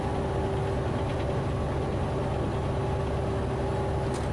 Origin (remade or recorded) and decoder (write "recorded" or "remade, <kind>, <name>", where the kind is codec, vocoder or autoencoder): recorded